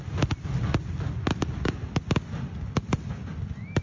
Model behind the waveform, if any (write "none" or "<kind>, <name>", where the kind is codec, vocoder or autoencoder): none